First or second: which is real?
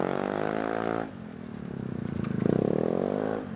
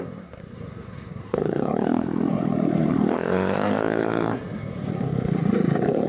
first